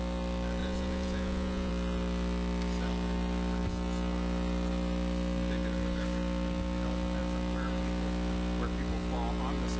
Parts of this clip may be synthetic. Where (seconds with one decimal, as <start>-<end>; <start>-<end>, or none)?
0.6-1.7